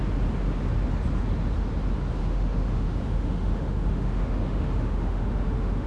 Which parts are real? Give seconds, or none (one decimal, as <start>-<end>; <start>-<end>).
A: 0.0-2.2